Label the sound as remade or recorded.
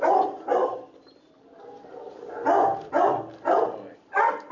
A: recorded